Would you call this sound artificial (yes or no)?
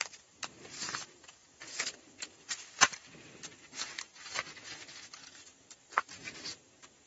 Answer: yes